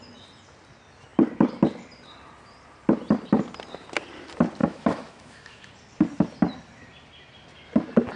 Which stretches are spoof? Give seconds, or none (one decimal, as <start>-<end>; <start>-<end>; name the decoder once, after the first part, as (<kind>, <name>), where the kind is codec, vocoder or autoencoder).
4.6-5.7 (autoencoder, DAC-VAE)